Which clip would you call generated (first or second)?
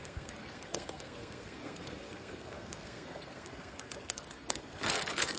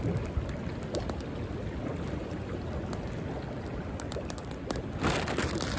first